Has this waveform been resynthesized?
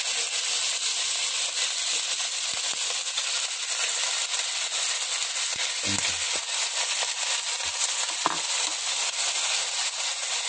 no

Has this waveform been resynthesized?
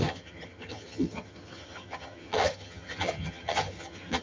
yes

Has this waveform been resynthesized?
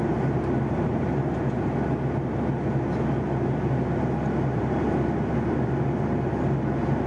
no